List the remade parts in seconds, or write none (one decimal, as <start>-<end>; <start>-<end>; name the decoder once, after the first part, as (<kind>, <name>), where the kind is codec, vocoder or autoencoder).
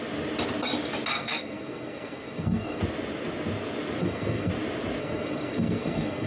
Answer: 1.1-2.8 (codec, SNAC); 4.0-4.5; 5.0-6.3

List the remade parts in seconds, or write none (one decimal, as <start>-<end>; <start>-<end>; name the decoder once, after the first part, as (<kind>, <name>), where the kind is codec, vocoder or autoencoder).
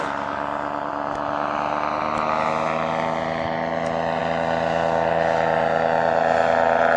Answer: none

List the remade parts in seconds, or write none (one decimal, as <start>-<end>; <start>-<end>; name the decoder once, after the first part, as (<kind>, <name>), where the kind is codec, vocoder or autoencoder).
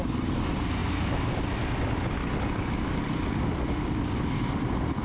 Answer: none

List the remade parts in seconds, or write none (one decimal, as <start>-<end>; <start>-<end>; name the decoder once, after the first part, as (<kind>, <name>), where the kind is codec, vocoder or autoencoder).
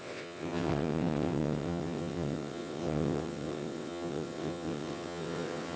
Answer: 0.0-5.8 (vocoder, WaveNeXt)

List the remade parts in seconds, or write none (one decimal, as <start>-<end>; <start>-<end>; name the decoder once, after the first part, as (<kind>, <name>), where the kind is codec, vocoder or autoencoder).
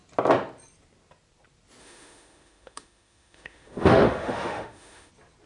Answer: 1.8-5.1 (autoencoder, DAC-VAE)